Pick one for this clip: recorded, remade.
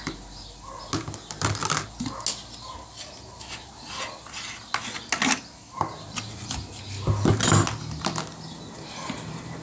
recorded